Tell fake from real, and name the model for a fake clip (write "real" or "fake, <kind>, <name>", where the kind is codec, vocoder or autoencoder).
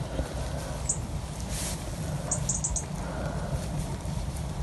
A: real